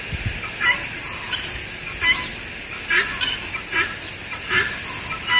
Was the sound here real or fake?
real